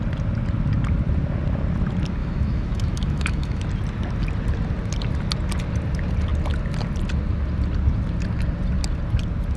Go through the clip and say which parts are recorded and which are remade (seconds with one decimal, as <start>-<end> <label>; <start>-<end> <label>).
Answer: 0.0-2.2 recorded; 2.2-3.6 remade; 3.6-9.6 recorded